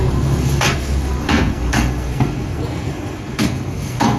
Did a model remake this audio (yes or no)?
yes